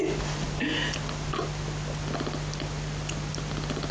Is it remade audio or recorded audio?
recorded